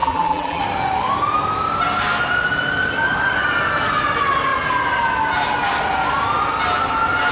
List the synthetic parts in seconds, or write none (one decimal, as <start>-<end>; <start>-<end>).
0.0-0.6